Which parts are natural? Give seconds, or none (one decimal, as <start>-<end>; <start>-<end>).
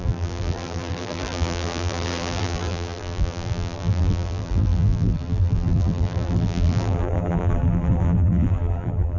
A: none